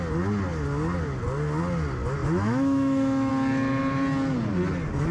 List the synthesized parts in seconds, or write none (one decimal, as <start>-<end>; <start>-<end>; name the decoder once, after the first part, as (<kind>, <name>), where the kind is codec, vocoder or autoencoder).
2.2-3.3 (autoencoder, DAC-VAE)